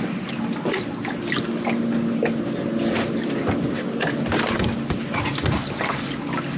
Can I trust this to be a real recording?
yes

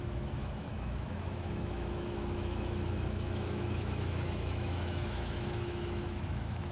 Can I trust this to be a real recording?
no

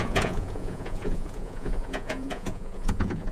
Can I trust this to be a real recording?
no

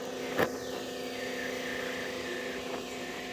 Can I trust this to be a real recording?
yes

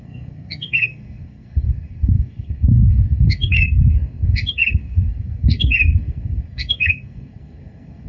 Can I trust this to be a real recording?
no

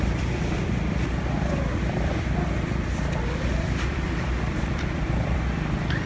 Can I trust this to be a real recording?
no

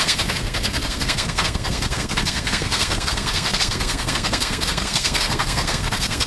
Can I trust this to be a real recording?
no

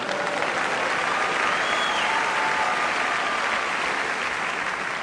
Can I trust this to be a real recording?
yes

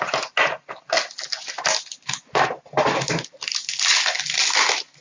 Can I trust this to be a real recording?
yes